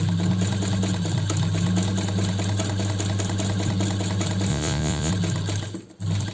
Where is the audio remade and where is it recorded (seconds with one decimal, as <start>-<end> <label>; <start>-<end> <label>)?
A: 0.0-4.5 recorded; 4.5-5.1 remade; 5.1-6.3 recorded